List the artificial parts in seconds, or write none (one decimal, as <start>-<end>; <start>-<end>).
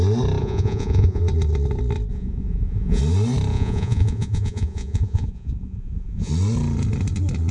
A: 0.4-1.2; 2.1-3.0; 3.5-6.3